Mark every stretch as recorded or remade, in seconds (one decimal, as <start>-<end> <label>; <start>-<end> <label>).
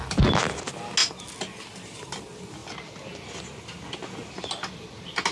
0.0-5.3 recorded